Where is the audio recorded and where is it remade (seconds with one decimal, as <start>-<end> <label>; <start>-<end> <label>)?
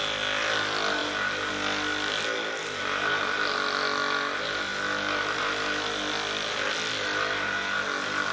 0.0-8.3 recorded